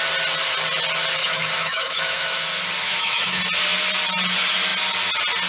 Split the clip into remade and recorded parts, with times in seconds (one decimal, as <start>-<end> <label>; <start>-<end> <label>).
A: 0.0-1.2 recorded; 1.2-2.4 remade; 2.4-2.8 recorded; 2.8-3.4 remade; 3.4-5.5 recorded